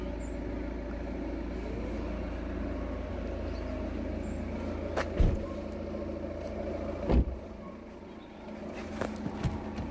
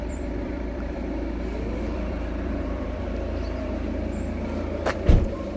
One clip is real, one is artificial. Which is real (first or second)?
first